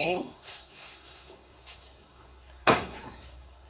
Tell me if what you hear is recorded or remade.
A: remade